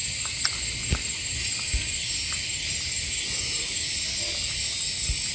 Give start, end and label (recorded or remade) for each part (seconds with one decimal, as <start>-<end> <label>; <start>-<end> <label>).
0.0-5.3 recorded